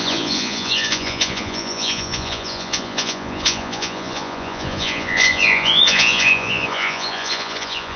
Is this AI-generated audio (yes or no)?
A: yes